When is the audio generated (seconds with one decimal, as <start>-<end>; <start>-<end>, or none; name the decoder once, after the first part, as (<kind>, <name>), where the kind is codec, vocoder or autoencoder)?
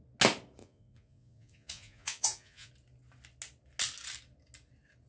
0.6-2.7 (vocoder, Vocos)